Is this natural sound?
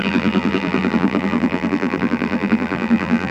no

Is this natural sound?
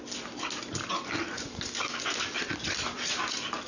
yes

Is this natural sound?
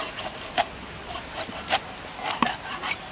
yes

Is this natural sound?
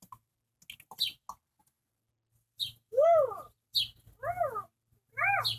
yes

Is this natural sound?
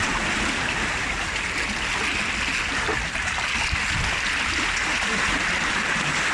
yes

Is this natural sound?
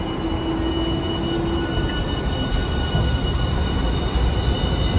yes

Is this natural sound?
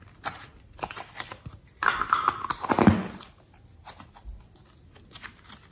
yes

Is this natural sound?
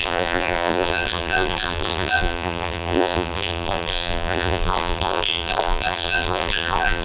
no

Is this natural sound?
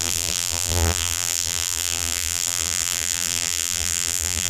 no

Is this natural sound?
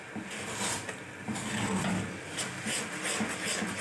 yes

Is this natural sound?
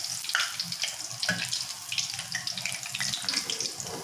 yes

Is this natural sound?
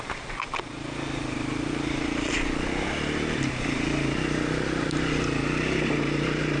yes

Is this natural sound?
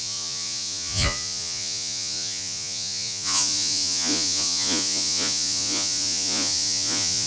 no